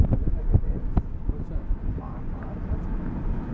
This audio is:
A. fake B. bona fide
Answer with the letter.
B